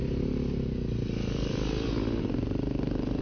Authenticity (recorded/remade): recorded